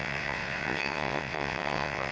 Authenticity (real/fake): fake